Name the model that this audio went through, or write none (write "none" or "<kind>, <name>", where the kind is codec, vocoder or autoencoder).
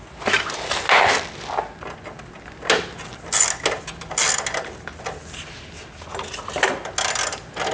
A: none